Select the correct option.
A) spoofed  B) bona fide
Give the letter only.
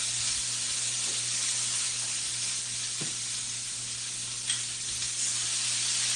B